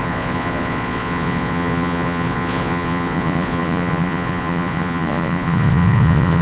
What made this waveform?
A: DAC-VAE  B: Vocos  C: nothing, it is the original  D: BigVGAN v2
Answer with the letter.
B